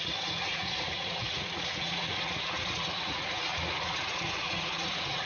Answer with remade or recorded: remade